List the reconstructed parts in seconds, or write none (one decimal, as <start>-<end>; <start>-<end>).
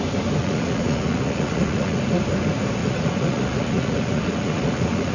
0.4-2.0; 2.8-5.1